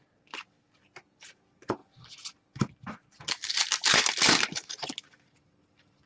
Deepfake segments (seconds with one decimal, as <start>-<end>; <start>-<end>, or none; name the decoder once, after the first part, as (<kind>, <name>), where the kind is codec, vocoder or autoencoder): none